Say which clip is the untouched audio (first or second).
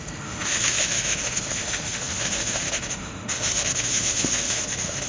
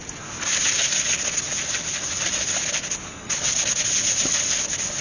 second